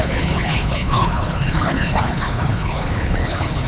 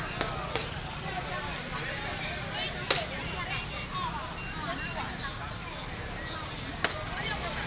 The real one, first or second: second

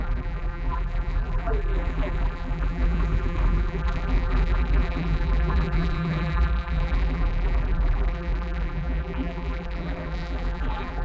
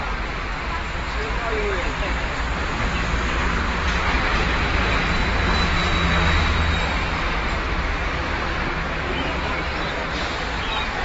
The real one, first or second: second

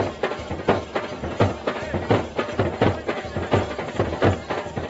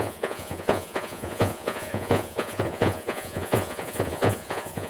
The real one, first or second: first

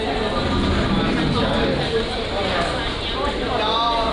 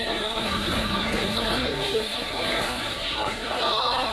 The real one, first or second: first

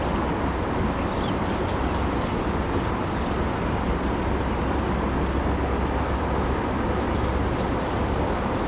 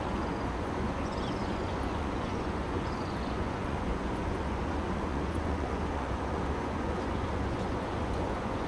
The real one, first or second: first